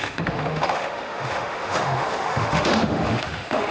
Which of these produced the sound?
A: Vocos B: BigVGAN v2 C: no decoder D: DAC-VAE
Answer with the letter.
D